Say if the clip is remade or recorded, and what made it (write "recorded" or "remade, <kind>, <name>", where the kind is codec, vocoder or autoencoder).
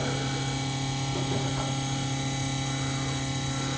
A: recorded